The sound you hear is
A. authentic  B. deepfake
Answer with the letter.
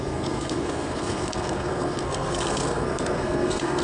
B